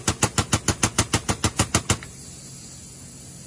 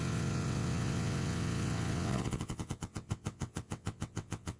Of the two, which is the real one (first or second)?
first